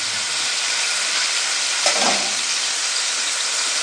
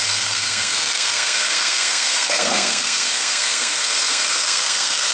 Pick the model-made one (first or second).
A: second